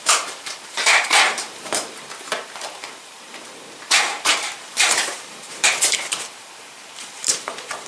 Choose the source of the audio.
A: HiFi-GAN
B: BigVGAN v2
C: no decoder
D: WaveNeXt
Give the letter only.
B